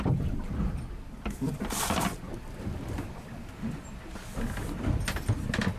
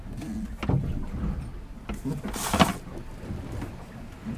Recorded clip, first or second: second